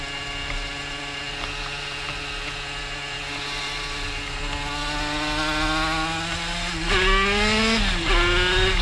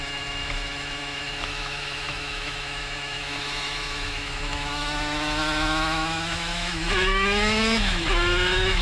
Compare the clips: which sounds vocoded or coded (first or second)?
second